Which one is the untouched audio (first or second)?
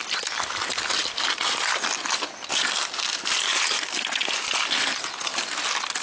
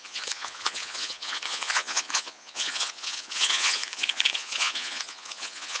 first